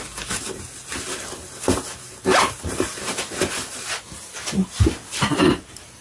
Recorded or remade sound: recorded